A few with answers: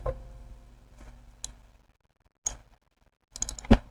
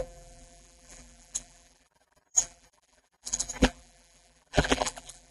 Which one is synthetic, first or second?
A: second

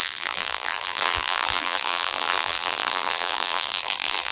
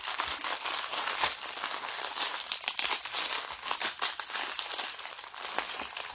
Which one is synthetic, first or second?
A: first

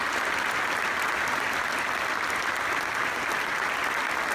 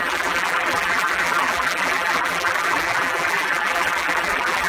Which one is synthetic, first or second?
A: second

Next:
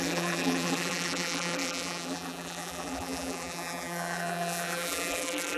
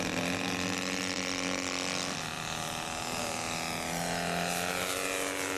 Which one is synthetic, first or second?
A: first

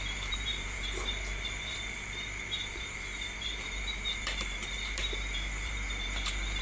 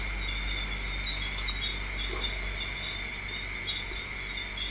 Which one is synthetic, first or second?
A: first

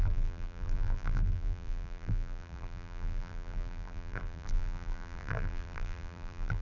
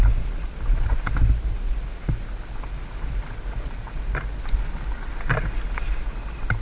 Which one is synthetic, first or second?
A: first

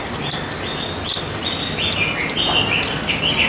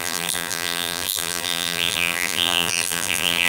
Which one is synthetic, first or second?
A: second